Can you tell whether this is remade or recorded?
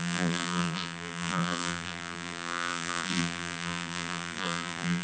remade